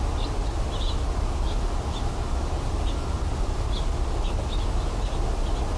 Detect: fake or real real